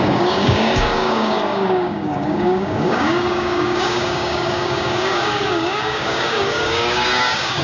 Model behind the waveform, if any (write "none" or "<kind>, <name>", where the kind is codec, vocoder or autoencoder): codec, DAC